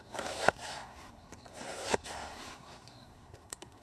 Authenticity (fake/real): fake